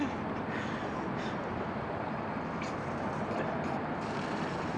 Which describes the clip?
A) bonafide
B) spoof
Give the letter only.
B